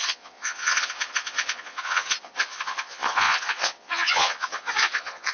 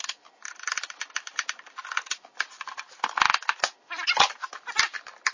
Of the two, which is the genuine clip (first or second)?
second